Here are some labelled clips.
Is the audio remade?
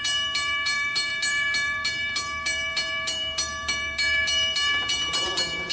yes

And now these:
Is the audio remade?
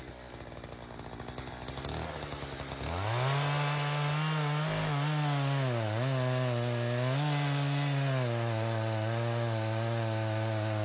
no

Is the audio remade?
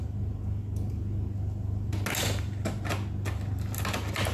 no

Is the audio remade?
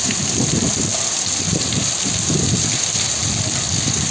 yes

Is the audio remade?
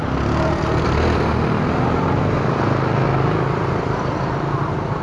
no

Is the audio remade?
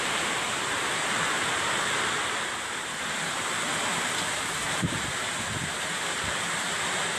yes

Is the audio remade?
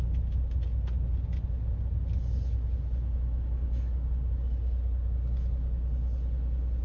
no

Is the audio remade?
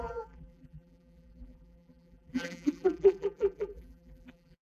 yes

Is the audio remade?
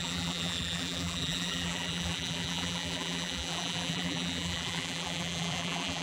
yes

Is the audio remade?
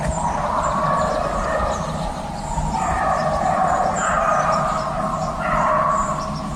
no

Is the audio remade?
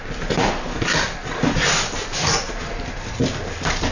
yes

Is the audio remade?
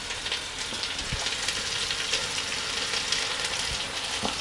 no